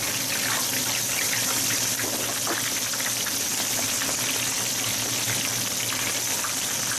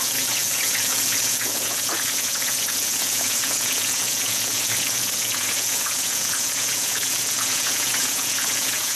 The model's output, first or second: second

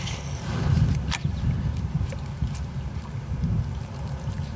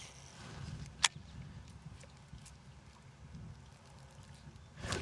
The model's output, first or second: first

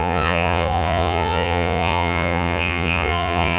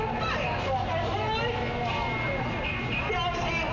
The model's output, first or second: first